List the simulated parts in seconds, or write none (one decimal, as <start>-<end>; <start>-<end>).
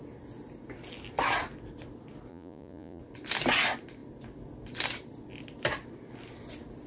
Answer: 2.3-3.0